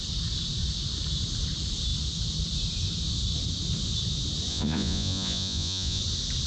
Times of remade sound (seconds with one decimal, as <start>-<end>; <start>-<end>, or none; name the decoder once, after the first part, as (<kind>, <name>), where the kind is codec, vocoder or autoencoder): 4.5-6.0 (vocoder, Vocos)